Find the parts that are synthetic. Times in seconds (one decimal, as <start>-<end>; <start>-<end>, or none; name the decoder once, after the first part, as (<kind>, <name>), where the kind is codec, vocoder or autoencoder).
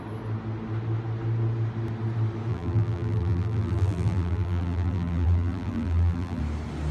2.5-6.4 (vocoder, BigVGAN v2)